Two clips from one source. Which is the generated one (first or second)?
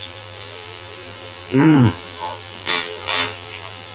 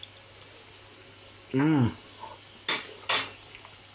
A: first